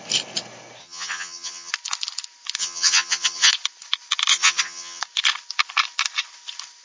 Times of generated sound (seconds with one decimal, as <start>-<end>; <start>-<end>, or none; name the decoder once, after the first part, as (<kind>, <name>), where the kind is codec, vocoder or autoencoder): 0.8-1.7 (vocoder, HiFi-GAN); 2.6-3.5; 4.3-5.0